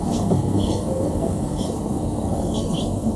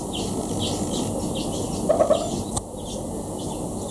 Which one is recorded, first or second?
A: second